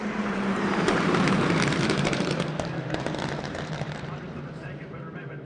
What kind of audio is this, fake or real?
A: fake